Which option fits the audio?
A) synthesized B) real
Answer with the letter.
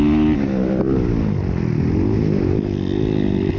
B